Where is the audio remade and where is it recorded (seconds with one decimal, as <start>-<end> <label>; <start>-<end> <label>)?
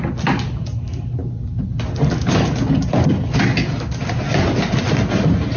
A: 0.0-5.6 recorded